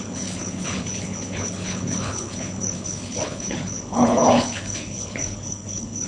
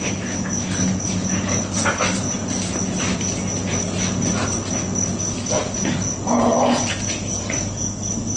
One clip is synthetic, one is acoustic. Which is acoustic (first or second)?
second